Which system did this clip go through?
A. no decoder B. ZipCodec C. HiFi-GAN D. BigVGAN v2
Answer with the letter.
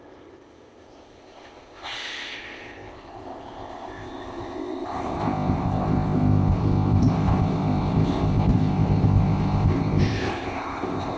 B